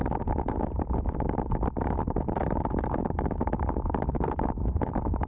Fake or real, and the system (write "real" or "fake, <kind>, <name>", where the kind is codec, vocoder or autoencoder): real